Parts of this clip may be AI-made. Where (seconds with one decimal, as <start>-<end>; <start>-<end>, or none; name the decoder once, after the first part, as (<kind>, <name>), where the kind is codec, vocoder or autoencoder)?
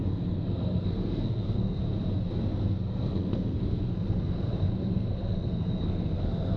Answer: 0.0-1.8 (codec, SNAC); 2.5-6.6